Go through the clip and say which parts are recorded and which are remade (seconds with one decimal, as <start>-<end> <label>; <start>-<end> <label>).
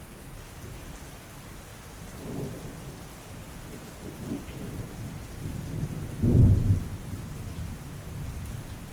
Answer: 0.0-1.7 recorded; 1.7-2.7 remade; 2.7-6.9 recorded; 6.9-7.5 remade; 7.5-8.9 recorded